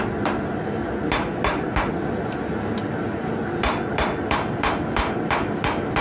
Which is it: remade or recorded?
recorded